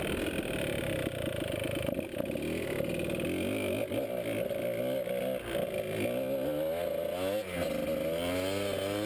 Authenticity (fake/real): real